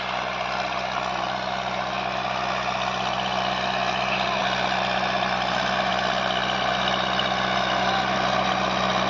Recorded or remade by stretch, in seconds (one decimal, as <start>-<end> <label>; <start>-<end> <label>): 0.0-9.1 recorded

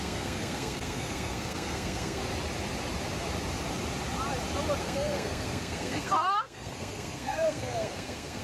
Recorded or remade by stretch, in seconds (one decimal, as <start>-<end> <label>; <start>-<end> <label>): 0.0-2.2 remade; 2.2-4.8 recorded; 4.8-8.4 remade

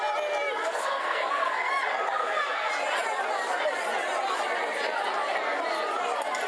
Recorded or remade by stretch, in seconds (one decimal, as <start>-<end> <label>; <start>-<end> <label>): 0.0-0.6 recorded; 0.6-1.7 remade; 1.7-2.2 recorded; 2.2-2.7 remade; 2.7-6.5 recorded

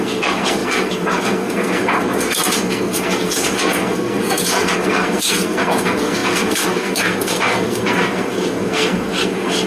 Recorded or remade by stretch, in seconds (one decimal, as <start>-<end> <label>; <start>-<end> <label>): 0.0-9.7 remade

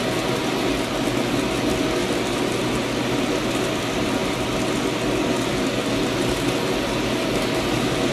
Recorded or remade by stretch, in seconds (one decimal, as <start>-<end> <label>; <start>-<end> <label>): 0.0-8.1 recorded

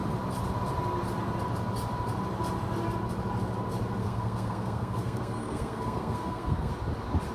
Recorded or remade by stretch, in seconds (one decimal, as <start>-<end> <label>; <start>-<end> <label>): 0.0-4.0 recorded; 4.0-6.7 remade; 6.7-7.3 recorded

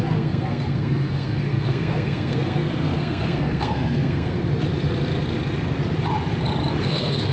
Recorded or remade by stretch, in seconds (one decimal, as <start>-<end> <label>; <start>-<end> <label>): 0.0-4.4 remade; 4.4-6.8 recorded; 6.8-7.3 remade

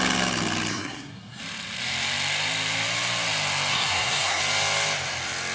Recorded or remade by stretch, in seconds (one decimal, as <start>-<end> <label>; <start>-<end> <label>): 0.0-0.7 recorded; 0.7-1.4 remade; 1.4-3.7 recorded; 3.7-4.4 remade; 4.4-5.5 recorded